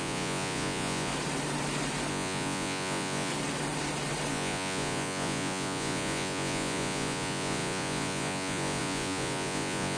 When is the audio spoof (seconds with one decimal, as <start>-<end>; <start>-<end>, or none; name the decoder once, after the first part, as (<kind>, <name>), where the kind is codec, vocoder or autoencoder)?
0.0-1.1 (vocoder, Vocos); 2.1-3.3; 4.3-10.0